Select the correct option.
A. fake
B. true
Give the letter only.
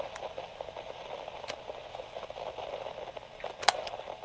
B